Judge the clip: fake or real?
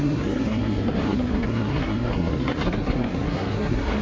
fake